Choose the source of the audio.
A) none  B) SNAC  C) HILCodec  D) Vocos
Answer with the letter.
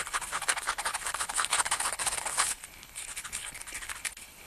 C